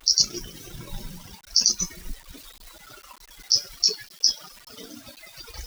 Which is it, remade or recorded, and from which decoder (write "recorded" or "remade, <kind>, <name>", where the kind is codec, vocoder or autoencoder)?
recorded